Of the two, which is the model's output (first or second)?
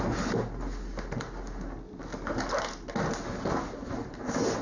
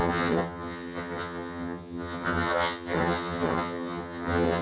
second